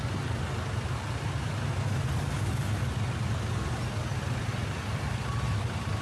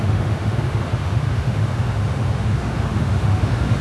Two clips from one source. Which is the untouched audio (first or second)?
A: first